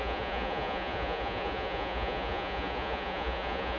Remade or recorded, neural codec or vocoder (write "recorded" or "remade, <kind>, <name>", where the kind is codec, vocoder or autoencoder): remade, vocoder, Vocos